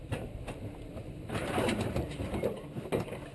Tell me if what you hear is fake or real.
fake